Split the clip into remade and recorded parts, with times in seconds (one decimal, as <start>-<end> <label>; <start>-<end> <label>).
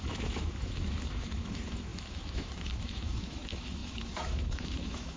0.0-5.2 remade